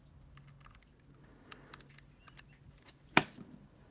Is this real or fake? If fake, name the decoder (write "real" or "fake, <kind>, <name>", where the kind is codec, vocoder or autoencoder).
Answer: real